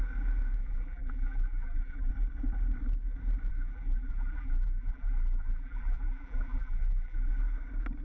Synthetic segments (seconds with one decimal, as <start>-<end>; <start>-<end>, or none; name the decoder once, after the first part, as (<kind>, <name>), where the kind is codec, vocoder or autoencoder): 0.6-2.1 (vocoder, BigVGAN v2); 3.5-7.3